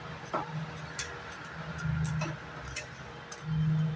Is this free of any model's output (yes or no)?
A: yes